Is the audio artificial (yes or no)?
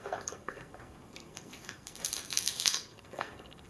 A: yes